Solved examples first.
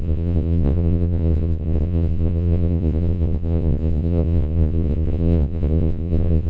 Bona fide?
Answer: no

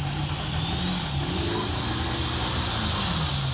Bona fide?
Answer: yes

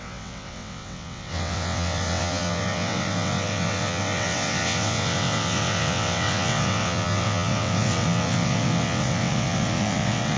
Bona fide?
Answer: no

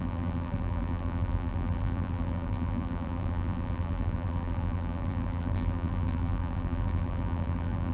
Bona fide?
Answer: no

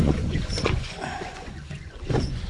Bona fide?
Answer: no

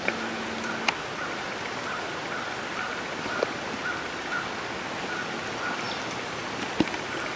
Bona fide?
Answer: yes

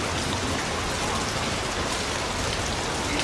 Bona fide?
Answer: yes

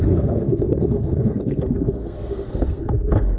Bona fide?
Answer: no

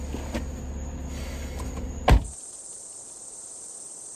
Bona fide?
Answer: yes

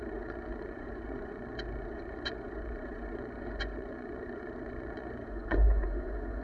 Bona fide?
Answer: no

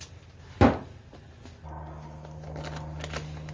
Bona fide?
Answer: yes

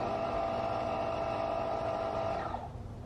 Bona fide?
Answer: yes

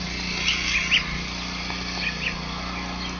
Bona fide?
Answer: yes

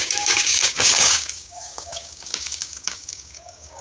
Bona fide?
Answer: no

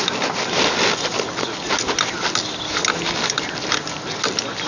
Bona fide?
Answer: yes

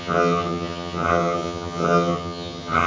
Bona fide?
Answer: no